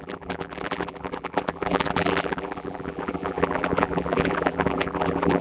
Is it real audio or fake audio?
fake